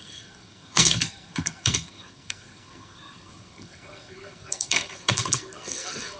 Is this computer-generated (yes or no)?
yes